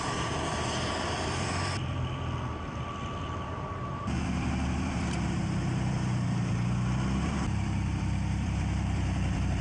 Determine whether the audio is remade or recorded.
remade